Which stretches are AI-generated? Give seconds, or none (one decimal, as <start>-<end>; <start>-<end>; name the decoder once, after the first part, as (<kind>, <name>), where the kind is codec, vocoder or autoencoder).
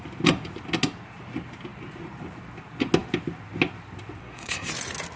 4.2-4.7 (codec, SNAC)